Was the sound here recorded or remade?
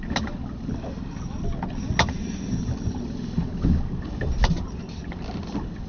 recorded